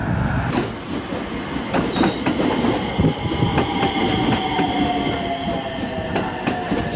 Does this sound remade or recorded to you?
recorded